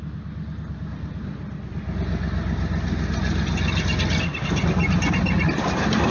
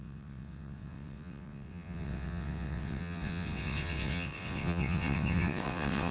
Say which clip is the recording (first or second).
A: first